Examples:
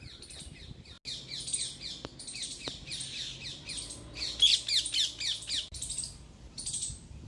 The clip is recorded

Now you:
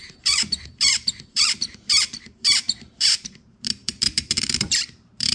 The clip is remade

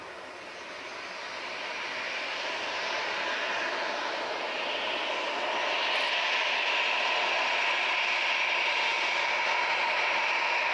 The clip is recorded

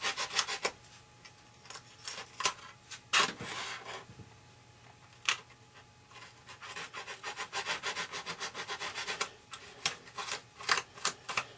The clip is recorded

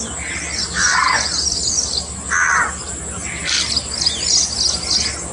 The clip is recorded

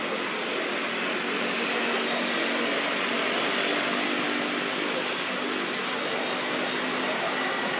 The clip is recorded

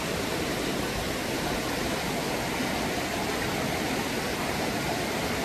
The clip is recorded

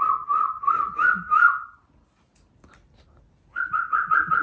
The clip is recorded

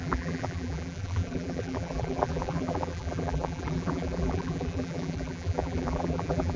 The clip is remade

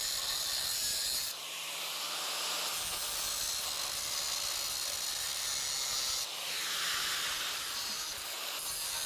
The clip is recorded